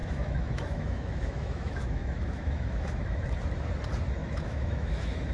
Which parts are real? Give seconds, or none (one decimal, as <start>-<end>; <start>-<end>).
3.2-4.2

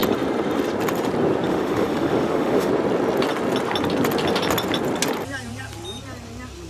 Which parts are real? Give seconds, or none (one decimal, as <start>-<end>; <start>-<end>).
0.0-1.5; 2.7-6.7

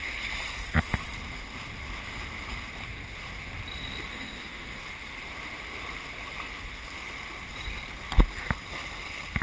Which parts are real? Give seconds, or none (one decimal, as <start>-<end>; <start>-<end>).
0.0-4.1; 4.8-9.4

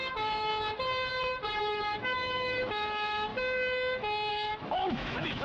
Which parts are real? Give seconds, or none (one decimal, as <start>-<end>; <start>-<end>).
0.5-1.6; 3.3-4.3

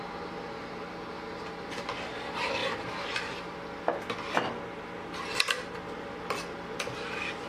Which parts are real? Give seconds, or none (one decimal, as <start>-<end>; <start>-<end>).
0.0-7.5

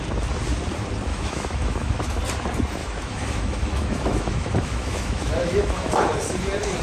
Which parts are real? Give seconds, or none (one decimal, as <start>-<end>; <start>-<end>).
0.0-1.1; 2.2-2.8; 5.9-6.8